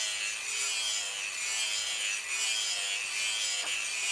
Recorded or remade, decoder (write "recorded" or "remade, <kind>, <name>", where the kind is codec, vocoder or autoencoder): recorded